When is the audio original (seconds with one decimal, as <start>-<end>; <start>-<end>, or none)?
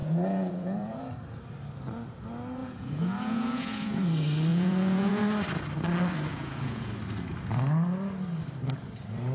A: 1.1-2.6; 4.0-4.5; 5.2-6.3; 6.9-9.3